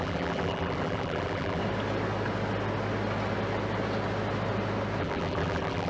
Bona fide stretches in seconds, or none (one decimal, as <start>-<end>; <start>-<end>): 1.6-5.0